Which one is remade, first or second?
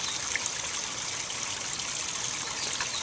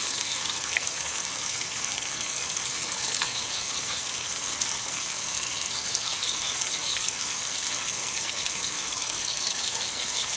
second